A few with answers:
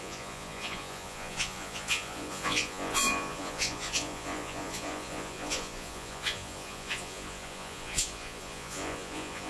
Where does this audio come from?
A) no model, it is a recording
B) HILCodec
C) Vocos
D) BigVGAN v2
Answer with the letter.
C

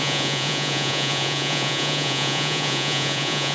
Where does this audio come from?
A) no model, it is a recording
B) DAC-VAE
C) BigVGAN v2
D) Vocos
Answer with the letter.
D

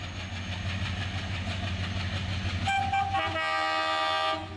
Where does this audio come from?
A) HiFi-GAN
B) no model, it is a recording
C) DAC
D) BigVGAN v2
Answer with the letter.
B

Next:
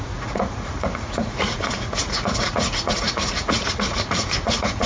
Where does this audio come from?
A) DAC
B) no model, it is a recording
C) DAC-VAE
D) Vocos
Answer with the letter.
D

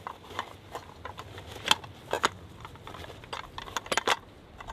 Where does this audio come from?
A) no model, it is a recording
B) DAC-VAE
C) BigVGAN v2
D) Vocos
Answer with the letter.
A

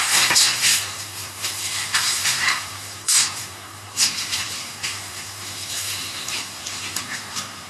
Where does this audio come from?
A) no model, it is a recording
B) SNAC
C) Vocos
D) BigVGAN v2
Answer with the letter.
B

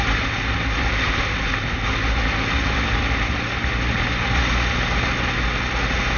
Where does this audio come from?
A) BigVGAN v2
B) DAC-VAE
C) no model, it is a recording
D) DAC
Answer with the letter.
C